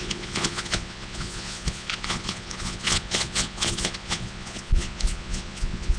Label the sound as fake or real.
fake